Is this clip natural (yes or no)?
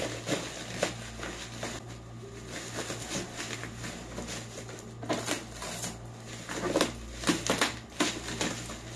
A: yes